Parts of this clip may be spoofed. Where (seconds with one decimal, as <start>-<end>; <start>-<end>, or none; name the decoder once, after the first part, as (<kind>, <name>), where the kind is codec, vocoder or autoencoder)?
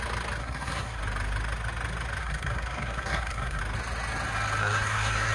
0.4-1.0 (codec, SNAC); 2.2-3.6; 4.6-5.3